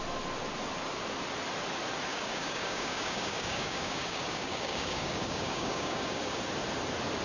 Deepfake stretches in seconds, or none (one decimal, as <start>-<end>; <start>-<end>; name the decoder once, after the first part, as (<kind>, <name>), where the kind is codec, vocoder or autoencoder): 2.1-6.4 (codec, DAC)